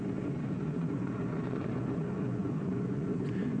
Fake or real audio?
fake